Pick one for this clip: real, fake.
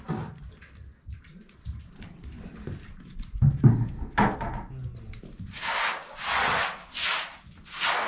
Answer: real